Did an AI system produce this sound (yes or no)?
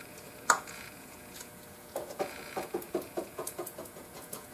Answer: yes